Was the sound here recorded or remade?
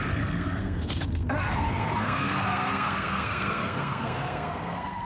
remade